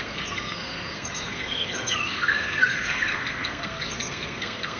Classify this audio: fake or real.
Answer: fake